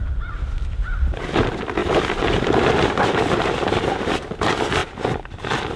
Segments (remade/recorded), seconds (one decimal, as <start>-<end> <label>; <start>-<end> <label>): 0.0-5.8 recorded

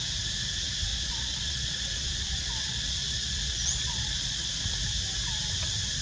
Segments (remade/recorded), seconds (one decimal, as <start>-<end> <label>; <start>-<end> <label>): 0.0-0.9 recorded; 0.9-4.5 remade; 4.5-6.0 recorded

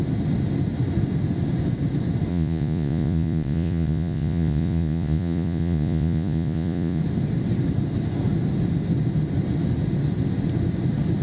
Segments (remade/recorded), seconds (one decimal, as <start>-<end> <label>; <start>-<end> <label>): 0.0-2.3 recorded; 2.3-7.0 remade; 7.0-11.2 recorded

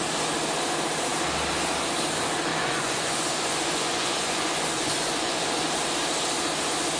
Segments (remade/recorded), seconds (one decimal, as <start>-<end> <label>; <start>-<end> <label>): 0.0-2.5 recorded; 2.5-5.7 remade; 5.7-7.0 recorded

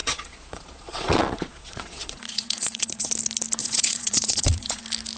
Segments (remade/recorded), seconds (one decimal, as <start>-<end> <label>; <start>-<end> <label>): 0.0-3.1 remade; 3.1-3.6 recorded; 3.6-4.8 remade; 4.8-5.2 recorded

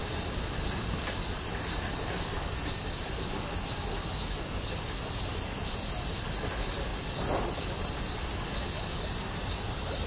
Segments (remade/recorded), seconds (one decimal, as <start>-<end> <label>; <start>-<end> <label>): 0.0-10.1 recorded